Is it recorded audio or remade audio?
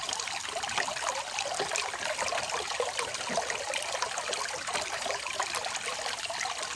recorded